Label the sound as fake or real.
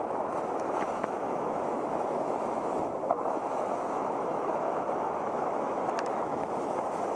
fake